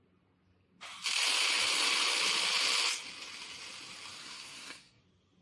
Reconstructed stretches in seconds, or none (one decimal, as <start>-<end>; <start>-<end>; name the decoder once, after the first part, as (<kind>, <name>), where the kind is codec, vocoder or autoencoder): 4.2-5.0 (codec, SNAC)